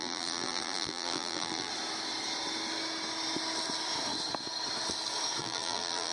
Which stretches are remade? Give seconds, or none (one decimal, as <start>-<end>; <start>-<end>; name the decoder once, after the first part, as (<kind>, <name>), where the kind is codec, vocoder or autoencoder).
0.0-1.7 (vocoder, BigVGAN v2); 5.4-6.1